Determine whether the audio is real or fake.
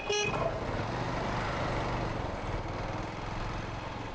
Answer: real